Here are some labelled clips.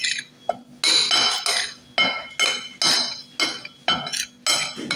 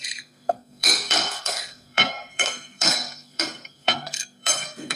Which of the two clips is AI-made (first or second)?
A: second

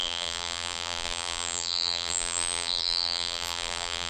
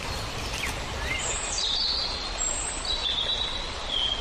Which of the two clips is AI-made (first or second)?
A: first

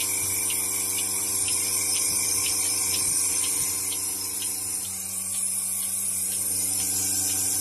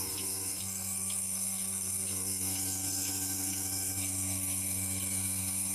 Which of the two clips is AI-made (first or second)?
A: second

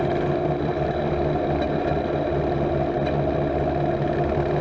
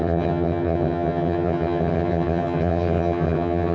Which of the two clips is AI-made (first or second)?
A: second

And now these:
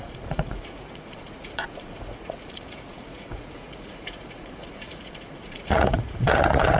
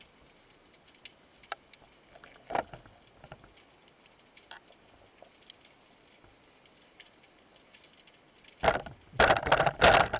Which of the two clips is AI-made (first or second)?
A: first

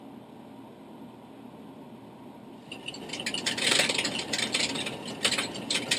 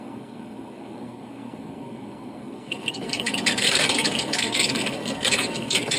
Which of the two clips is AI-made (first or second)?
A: second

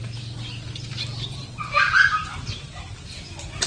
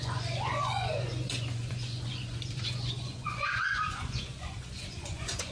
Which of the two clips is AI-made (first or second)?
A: second